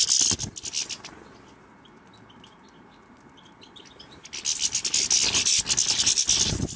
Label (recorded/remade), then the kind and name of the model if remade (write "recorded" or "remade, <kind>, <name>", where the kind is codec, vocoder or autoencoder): recorded